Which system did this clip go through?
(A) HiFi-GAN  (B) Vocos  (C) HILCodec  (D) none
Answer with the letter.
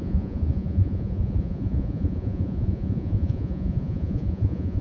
B